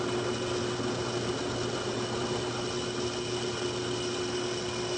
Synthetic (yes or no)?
no